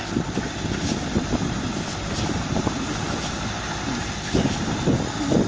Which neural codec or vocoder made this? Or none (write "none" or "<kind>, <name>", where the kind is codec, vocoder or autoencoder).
none